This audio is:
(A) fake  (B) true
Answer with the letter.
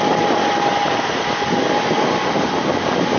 B